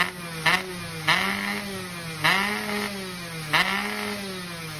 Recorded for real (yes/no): yes